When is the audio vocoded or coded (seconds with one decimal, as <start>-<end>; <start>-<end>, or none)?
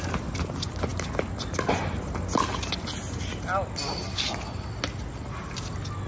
none